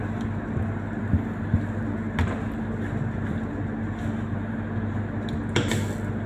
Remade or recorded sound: recorded